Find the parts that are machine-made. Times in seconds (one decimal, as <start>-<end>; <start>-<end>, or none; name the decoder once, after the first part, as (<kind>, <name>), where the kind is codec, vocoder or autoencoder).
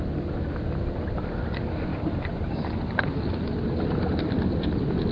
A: 1.9-3.2 (vocoder, BigVGAN v2)